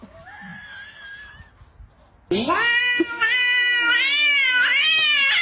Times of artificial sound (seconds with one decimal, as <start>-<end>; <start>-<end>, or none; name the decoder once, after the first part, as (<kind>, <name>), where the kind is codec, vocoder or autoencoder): none